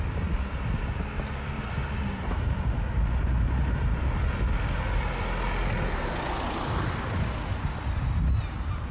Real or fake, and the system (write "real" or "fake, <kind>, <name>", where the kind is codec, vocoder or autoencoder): real